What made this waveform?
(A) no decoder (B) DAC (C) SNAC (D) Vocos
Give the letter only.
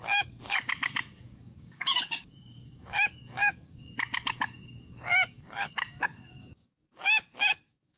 B